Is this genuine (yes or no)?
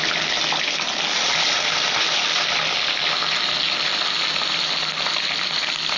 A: yes